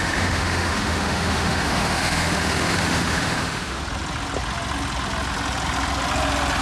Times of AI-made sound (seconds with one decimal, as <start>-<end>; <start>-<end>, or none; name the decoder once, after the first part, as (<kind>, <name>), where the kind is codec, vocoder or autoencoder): 0.0-3.8 (autoencoder, DAC-VAE)